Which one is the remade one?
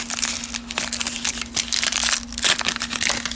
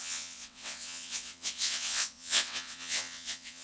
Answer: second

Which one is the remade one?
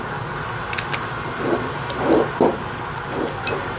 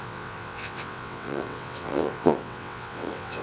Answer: second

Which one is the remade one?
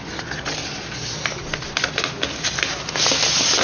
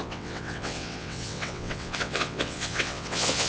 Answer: second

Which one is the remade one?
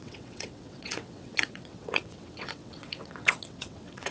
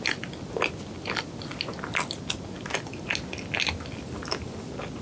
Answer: first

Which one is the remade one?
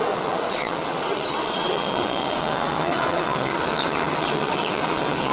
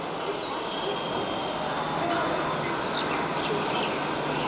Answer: first